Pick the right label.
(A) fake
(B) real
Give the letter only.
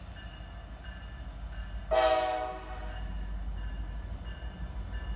B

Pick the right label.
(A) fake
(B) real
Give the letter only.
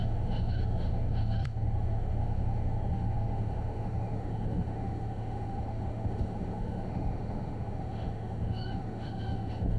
A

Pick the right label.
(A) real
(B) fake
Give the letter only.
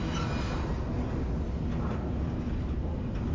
A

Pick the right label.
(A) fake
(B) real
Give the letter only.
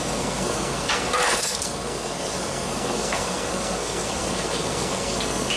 A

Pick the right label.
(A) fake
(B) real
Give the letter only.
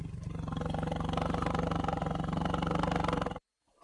B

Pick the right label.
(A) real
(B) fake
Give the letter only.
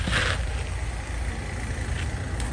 A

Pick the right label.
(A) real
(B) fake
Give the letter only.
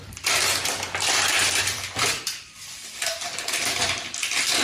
B